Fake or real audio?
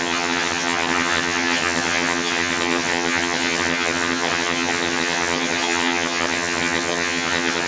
fake